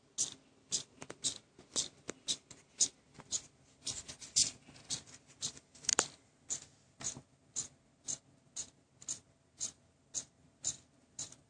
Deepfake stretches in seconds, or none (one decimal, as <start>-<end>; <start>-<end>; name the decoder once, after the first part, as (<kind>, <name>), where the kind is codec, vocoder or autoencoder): none